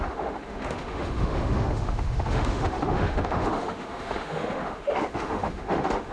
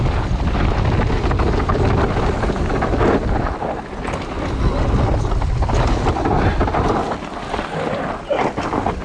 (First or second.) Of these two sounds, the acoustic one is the second